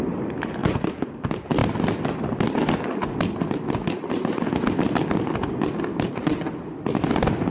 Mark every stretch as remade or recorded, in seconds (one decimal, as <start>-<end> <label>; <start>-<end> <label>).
0.0-0.6 recorded; 0.6-1.1 remade; 1.1-7.5 recorded